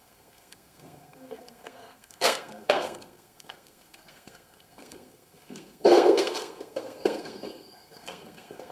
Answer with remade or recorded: remade